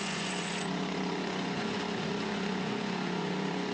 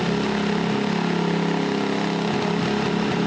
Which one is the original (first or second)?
second